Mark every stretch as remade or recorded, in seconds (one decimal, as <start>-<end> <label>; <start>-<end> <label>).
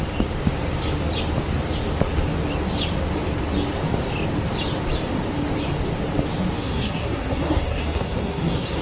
0.0-6.6 recorded; 6.6-8.8 remade